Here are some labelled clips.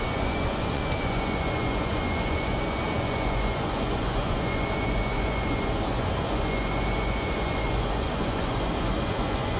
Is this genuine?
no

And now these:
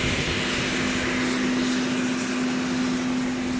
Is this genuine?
yes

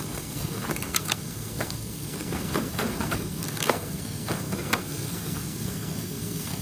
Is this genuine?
no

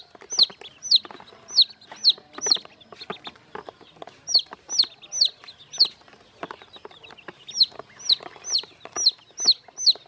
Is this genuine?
yes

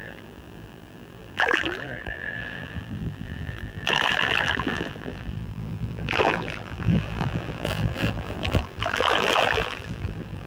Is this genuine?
no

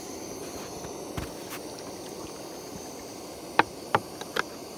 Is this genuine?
yes